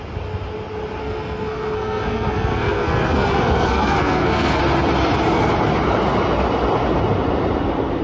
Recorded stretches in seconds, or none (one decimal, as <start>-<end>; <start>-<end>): 0.0-1.0; 4.6-8.0